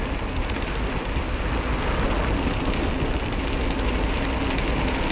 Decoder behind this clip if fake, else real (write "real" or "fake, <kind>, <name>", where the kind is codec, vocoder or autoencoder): real